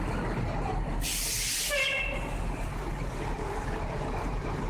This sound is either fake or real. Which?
real